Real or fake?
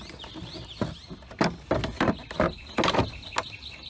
real